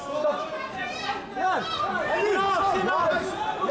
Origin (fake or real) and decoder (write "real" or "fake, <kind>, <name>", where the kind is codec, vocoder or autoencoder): real